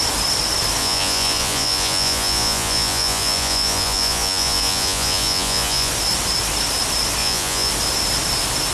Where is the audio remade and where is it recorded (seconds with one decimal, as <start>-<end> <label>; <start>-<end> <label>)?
0.0-0.8 recorded; 0.8-5.9 remade; 5.9-7.2 recorded; 7.2-7.7 remade; 7.7-8.7 recorded